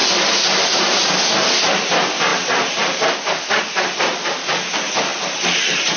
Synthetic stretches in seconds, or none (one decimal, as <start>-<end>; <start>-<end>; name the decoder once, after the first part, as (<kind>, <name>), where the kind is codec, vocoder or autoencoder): 0.0-1.1 (vocoder, BigVGAN v2); 2.3-3.2